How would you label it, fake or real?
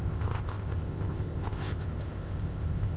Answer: fake